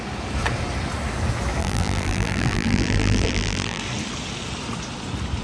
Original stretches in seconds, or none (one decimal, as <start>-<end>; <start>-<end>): 0.0-1.6; 3.8-5.4